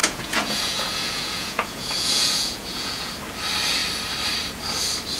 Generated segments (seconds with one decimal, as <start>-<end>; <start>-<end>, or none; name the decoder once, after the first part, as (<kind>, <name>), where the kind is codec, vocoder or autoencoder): 0.0-3.1 (vocoder, Vocos)